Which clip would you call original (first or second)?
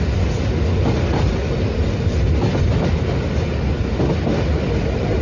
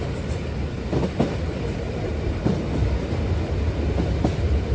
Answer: first